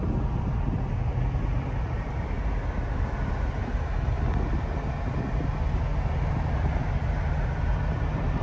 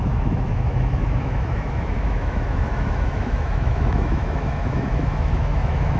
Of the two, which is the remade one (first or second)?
second